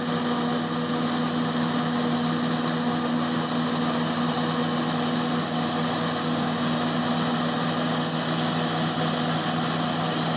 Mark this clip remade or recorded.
recorded